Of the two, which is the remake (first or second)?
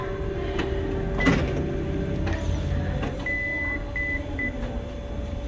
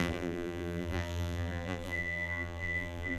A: second